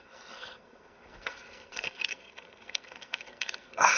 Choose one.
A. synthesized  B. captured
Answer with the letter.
A